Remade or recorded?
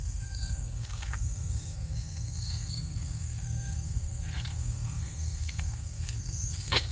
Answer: remade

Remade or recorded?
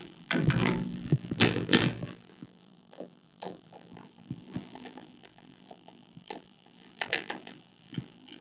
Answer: remade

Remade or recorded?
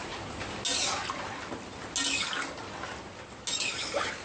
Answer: recorded